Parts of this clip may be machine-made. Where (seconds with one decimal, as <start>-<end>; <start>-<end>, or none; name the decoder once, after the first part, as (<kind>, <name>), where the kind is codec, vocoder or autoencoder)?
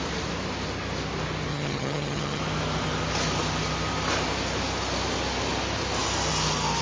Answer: 1.5-2.4 (vocoder, HiFi-GAN)